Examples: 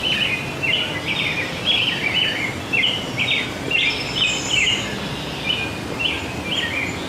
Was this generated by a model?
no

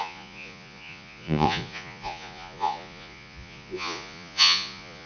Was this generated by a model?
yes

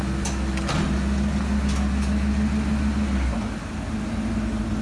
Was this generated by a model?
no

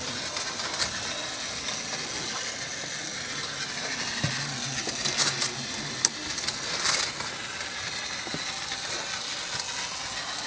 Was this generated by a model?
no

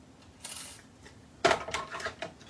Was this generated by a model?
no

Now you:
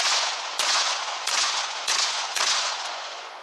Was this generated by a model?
yes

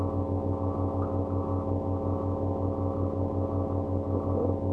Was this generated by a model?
no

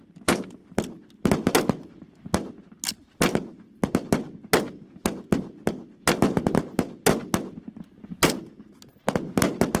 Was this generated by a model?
no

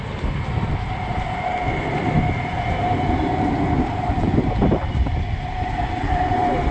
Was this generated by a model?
no